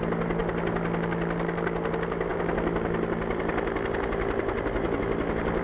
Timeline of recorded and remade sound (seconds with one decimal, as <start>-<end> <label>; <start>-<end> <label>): 0.0-5.6 recorded